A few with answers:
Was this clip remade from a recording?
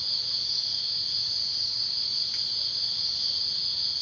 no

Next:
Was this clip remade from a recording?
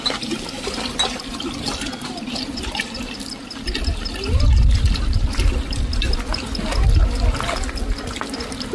no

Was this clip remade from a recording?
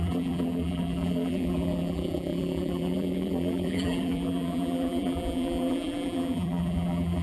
yes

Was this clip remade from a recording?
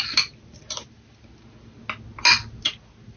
no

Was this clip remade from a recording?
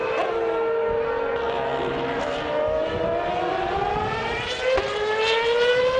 no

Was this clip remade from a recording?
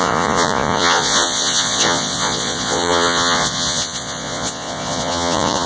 yes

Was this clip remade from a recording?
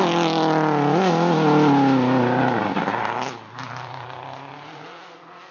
no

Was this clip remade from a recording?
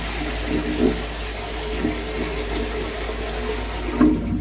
no